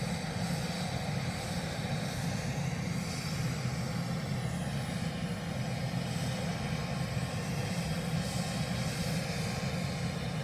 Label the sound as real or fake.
real